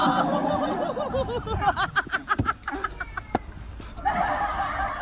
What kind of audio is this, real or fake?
real